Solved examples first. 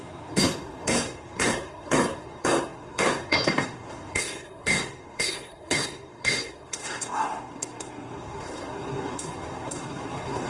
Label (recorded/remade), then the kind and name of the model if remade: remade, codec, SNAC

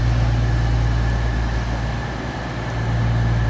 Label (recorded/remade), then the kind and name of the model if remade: recorded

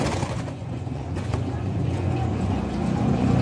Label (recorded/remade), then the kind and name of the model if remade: remade, vocoder, Vocos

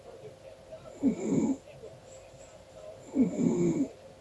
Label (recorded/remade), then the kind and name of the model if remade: recorded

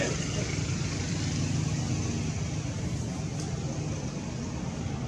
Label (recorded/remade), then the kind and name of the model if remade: recorded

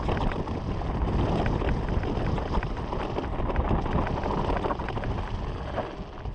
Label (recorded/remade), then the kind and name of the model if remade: recorded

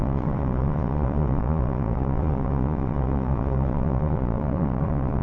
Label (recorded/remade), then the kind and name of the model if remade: remade, vocoder, Vocos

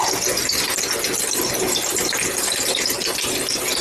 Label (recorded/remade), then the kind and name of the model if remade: recorded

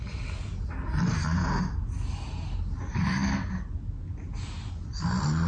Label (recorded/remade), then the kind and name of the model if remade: recorded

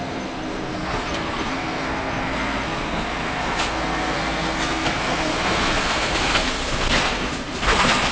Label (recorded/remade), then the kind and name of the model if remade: remade, codec, SNAC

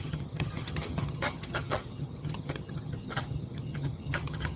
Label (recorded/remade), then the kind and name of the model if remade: remade, vocoder, HiFi-GAN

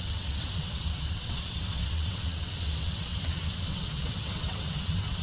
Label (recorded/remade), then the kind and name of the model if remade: remade, vocoder, WaveNeXt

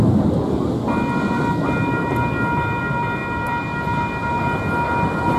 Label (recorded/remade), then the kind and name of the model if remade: recorded